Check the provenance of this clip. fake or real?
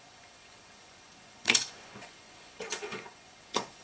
fake